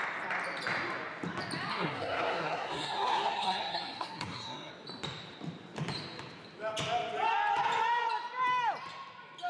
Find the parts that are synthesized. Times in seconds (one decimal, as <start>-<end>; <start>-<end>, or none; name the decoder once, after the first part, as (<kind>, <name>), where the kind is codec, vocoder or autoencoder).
1.7-4.7 (codec, SNAC)